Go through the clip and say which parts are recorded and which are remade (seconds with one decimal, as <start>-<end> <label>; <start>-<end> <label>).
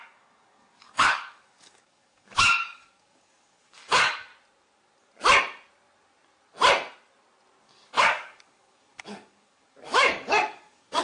0.0-4.3 remade; 4.3-7.6 recorded; 7.6-11.0 remade